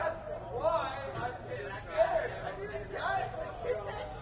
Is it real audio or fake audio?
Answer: real